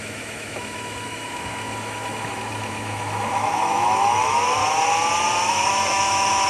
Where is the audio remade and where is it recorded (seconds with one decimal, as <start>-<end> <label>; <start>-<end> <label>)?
0.0-4.6 remade; 4.6-5.5 recorded; 5.5-6.5 remade